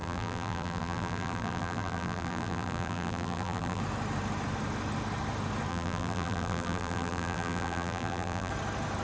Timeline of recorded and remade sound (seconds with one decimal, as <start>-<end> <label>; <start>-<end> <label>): 0.0-3.8 remade; 3.8-5.7 recorded; 5.7-8.5 remade; 8.5-9.0 recorded